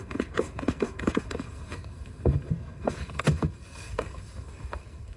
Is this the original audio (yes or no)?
no